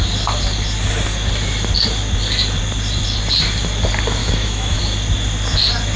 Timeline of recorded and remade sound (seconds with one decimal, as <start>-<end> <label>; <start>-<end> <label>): 0.0-4.2 recorded; 4.2-4.8 remade; 4.8-6.0 recorded